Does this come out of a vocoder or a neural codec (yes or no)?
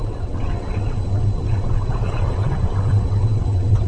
yes